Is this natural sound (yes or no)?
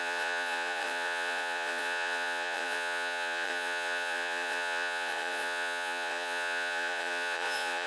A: no